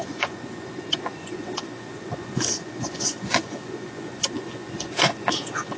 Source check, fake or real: fake